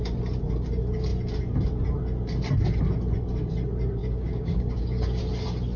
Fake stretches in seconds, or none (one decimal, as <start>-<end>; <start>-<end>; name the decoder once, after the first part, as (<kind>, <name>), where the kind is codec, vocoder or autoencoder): 4.0-5.2 (codec, DAC)